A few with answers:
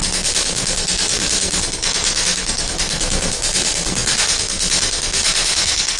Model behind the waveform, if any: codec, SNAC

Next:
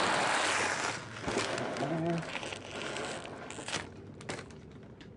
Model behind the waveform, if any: none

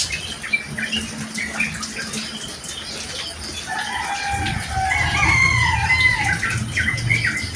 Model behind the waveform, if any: none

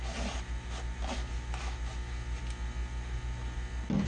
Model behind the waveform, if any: none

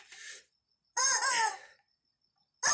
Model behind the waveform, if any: none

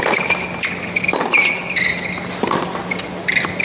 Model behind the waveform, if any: none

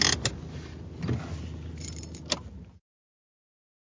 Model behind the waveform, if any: none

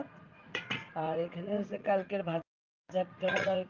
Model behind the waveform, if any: vocoder, Vocos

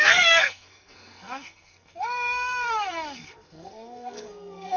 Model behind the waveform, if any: codec, SNAC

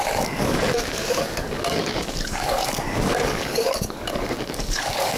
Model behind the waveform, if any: codec, DAC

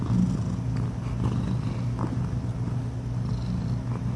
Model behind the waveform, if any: none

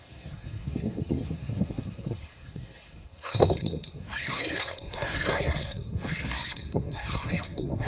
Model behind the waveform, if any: codec, SNAC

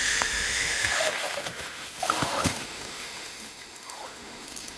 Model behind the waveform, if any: autoencoder, DAC-VAE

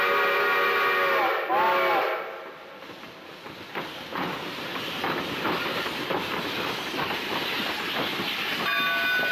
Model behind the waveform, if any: none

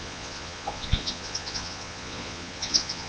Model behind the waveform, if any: vocoder, Vocos